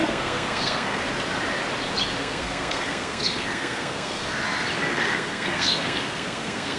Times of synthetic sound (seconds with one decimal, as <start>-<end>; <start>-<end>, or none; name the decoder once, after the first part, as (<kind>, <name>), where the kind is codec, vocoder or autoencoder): 0.0-1.0 (codec, SNAC); 2.2-4.4; 4.9-6.8

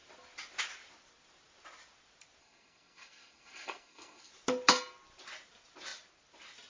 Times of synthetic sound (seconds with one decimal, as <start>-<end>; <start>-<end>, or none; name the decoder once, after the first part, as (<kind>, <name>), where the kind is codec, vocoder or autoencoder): 2.4-4.3 (codec, SNAC)

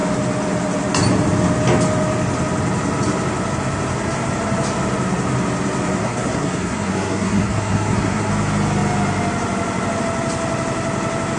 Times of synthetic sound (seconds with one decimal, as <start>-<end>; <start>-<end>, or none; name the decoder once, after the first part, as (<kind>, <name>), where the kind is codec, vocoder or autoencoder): 6.0-8.3 (codec, SNAC)

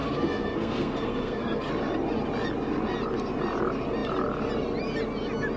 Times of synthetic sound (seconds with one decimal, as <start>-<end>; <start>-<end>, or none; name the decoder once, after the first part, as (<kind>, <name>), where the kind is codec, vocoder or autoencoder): 0.0-1.7 (codec, SNAC)

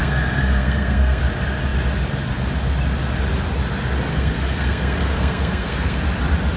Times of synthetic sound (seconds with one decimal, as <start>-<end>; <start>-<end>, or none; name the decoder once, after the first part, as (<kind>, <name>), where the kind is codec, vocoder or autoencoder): 0.0-1.2 (codec, SNAC); 4.1-6.0

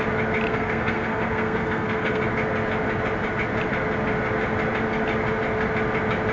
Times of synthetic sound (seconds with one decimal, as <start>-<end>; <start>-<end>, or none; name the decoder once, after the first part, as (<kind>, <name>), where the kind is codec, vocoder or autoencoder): 0.5-2.2 (codec, SNAC)